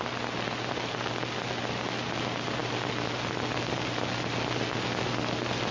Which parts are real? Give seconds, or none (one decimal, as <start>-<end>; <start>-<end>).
0.0-5.7